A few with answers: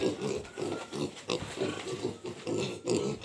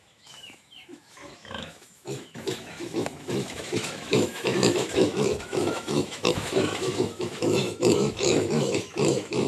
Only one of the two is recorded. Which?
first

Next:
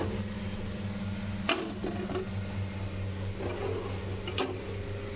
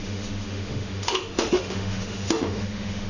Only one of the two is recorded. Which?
first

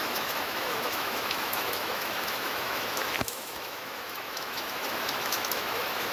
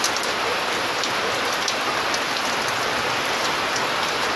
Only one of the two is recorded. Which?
second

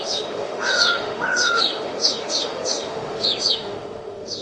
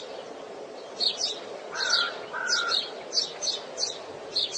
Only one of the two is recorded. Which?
second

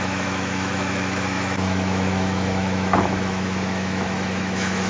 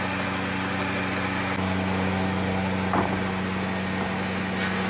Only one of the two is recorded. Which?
second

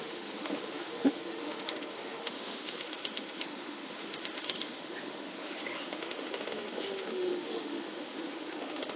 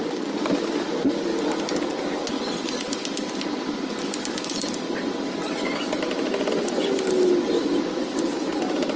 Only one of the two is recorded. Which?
second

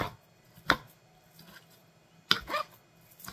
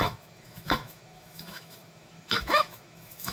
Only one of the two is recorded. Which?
first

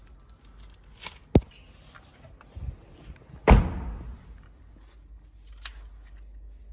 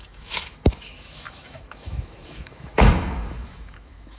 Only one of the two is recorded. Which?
first